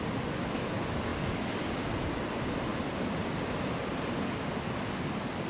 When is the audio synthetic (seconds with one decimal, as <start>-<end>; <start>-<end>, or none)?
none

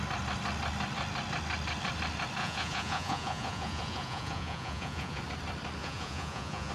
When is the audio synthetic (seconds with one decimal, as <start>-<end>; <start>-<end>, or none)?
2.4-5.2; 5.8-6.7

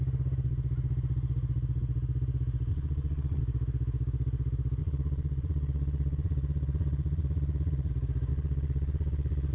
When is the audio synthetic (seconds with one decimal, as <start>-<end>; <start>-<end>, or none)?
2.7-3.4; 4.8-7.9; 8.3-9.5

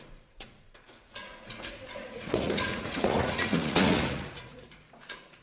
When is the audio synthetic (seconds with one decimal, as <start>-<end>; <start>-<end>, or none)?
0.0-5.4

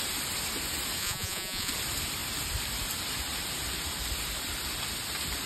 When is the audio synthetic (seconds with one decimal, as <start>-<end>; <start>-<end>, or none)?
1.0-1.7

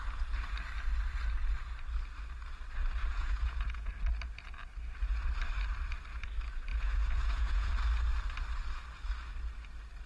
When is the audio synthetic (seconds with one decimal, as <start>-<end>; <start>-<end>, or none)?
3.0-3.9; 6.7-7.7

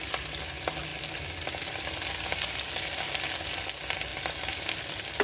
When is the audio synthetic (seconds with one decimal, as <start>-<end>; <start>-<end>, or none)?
none